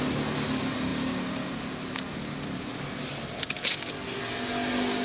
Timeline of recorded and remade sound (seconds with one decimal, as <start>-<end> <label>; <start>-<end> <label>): 0.0-5.0 recorded